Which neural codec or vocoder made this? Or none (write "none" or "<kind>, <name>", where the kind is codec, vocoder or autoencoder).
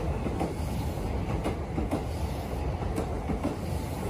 none